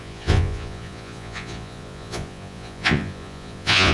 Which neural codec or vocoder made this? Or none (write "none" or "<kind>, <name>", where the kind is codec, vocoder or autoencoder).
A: vocoder, Vocos